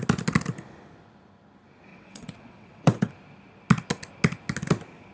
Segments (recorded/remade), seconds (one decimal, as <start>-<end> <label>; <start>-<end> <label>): 0.0-1.9 recorded; 1.9-3.1 remade; 3.1-5.1 recorded